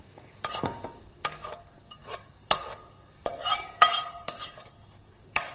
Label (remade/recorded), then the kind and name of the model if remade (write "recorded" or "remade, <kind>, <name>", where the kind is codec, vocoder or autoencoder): remade, codec, DAC